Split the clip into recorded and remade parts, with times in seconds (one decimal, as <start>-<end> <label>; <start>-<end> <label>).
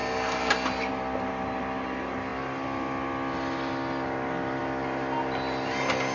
0.0-6.1 recorded